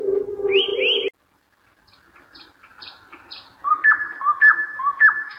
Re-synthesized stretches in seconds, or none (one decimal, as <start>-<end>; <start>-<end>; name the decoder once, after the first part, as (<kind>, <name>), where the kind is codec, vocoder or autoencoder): 4.5-5.4 (autoencoder, DAC-VAE)